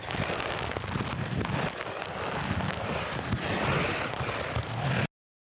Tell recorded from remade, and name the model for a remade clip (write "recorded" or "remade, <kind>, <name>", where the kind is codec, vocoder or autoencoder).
recorded